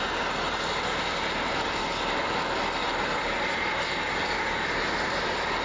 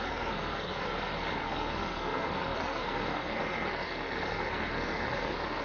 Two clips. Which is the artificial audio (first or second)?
second